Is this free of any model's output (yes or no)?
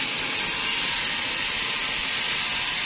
yes